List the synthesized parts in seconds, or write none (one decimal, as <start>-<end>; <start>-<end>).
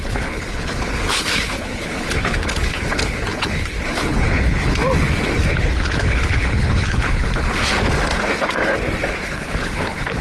0.0-4.8; 5.5-7.6; 9.1-10.2